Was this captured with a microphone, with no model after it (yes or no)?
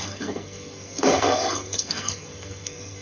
no